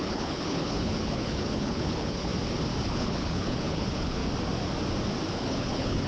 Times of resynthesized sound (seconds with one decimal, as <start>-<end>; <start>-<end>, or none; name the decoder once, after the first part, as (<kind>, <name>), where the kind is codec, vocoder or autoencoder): 0.0-2.3 (codec, HILCodec); 2.8-4.2; 5.3-6.1